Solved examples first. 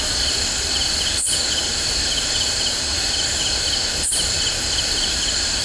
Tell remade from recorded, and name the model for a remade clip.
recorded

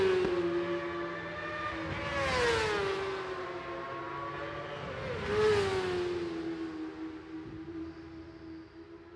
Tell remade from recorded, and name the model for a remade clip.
recorded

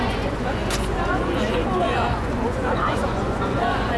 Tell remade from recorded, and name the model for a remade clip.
remade, vocoder, Vocos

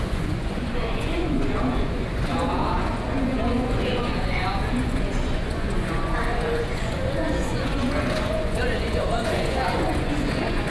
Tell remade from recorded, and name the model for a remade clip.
remade, vocoder, Vocos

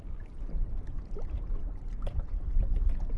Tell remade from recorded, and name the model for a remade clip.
recorded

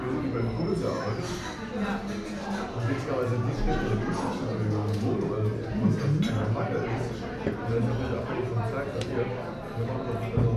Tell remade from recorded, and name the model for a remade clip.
recorded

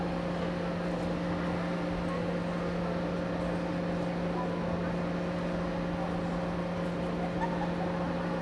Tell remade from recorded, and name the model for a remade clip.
recorded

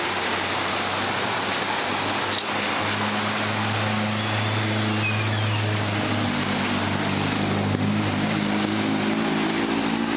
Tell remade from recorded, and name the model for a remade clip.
recorded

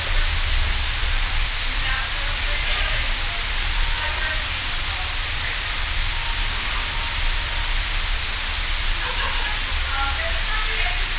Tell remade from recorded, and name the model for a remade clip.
recorded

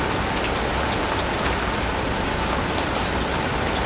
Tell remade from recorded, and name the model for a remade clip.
recorded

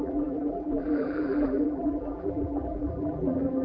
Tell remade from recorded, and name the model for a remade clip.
remade, vocoder, BigVGAN v2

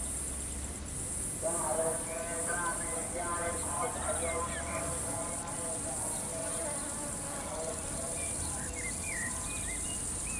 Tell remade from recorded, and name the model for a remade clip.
recorded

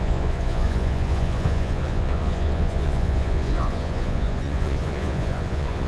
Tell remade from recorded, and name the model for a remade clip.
remade, vocoder, Vocos